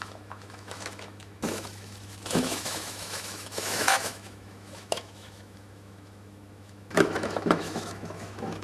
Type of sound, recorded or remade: remade